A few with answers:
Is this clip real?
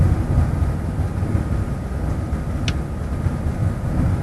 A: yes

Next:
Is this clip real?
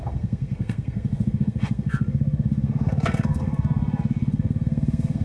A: no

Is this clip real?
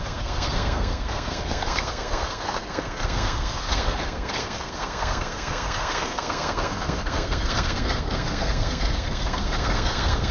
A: no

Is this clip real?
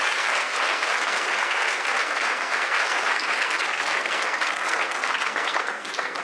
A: no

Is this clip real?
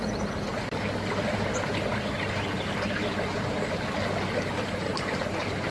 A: yes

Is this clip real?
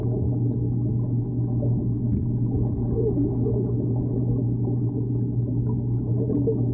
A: yes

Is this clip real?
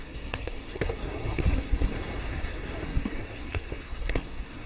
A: no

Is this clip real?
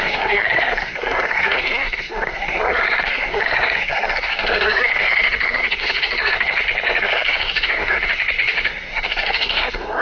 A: no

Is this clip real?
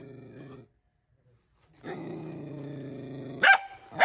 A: yes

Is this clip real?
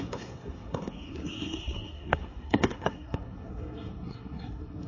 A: no